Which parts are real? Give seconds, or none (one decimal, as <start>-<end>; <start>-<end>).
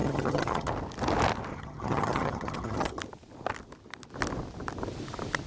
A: 0.7-1.5; 3.0-5.5